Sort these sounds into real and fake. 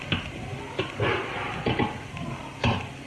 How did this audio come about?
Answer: real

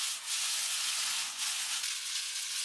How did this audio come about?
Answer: fake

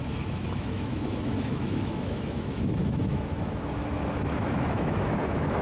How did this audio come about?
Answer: fake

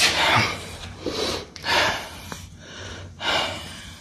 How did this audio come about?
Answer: fake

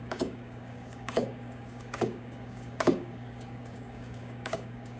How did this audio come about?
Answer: fake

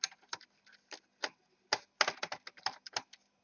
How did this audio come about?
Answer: real